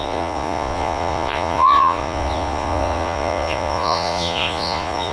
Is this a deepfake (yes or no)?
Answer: yes